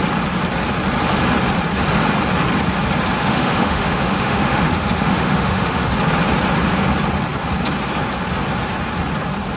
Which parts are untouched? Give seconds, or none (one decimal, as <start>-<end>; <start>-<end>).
0.0-3.2; 5.9-9.6